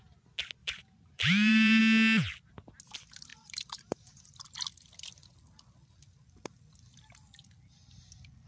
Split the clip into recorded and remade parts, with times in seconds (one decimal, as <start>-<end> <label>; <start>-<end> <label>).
0.0-0.6 recorded; 0.6-1.8 remade; 1.8-3.3 recorded; 3.3-4.7 remade; 4.7-8.5 recorded